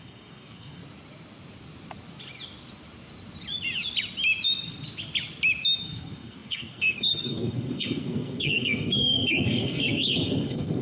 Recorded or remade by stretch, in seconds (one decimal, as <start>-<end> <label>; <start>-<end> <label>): 0.0-0.8 remade; 0.8-5.8 recorded; 5.8-10.8 remade